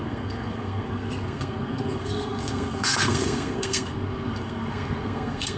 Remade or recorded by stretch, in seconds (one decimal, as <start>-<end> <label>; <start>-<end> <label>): 0.0-5.6 remade